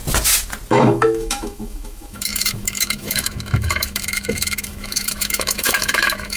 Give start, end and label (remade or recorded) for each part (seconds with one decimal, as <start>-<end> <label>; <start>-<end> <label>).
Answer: 0.0-0.7 recorded; 0.7-6.4 remade